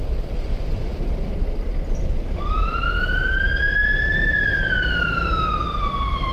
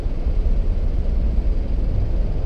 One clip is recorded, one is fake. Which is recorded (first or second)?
second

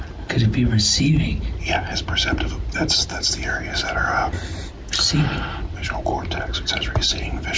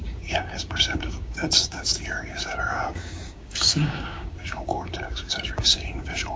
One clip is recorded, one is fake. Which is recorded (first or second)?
first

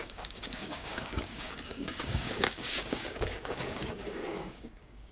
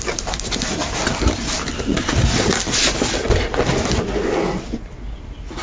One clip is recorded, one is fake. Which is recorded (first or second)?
second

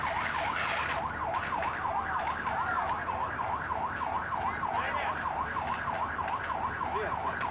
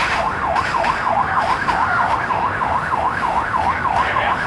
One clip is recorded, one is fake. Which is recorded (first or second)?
first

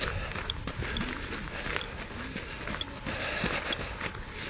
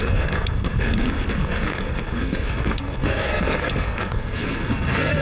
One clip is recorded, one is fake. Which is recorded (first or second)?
first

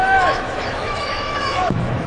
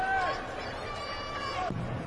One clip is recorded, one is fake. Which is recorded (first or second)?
second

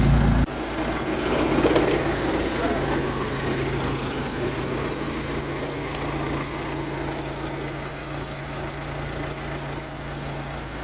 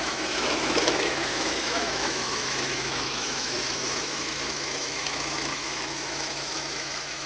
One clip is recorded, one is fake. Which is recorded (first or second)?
first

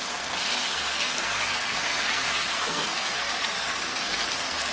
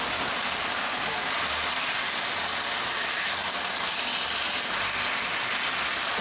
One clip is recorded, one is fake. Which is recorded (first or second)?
second